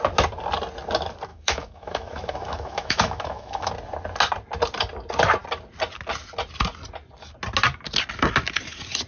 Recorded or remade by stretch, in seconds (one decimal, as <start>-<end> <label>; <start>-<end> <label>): 0.0-1.3 recorded; 1.3-3.7 remade; 3.7-9.1 recorded